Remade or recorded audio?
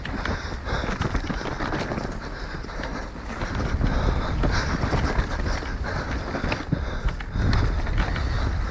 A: recorded